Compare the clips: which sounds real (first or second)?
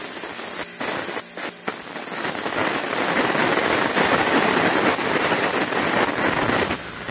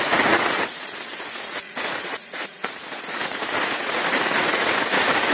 first